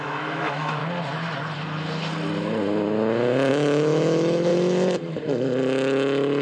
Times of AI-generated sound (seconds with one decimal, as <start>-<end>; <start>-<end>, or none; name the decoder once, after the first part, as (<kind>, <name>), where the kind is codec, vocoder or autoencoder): 0.0-0.8 (autoencoder, DAC-VAE); 3.5-4.5